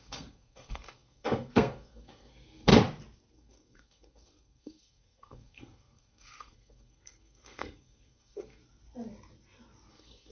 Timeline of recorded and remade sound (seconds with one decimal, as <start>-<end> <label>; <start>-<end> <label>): 0.0-2.7 remade; 2.7-3.3 recorded; 3.3-8.6 remade; 8.6-9.9 recorded; 9.9-10.3 remade